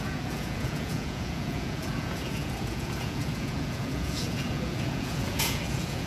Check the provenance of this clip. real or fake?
fake